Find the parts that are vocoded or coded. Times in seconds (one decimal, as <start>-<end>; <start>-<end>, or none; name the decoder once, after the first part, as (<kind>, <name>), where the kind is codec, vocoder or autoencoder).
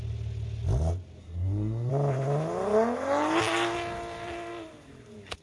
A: 1.2-1.9 (codec, SNAC)